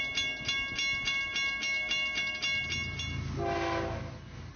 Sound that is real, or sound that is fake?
real